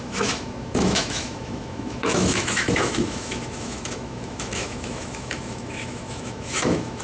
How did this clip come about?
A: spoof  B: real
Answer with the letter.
A